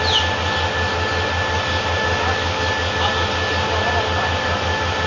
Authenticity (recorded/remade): recorded